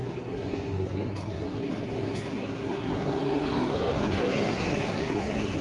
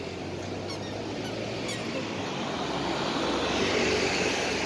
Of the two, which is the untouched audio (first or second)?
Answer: second